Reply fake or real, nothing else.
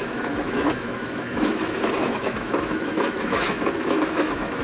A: fake